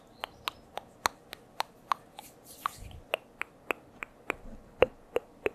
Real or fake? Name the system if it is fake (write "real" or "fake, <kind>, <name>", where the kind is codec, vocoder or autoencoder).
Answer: real